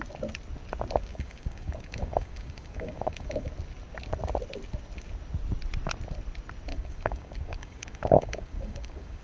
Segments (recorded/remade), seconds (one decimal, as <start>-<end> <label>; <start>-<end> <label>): 0.0-1.1 recorded; 1.1-3.5 remade; 3.5-6.7 recorded; 6.7-9.2 remade